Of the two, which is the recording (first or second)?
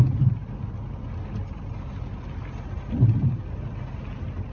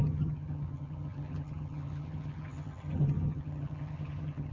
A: first